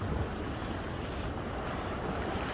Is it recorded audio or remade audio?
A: recorded